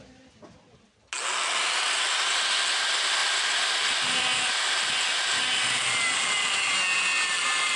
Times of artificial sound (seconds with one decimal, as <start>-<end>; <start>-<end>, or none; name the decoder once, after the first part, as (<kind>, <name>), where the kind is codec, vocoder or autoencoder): none